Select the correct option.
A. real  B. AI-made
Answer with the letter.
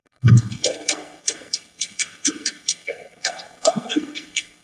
B